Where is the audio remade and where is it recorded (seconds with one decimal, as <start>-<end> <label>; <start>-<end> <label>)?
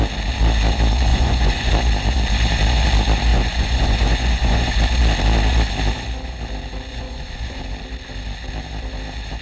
0.0-1.1 recorded; 1.1-1.7 remade; 1.7-3.3 recorded; 3.3-4.7 remade; 4.7-6.9 recorded; 6.9-7.6 remade; 7.6-9.4 recorded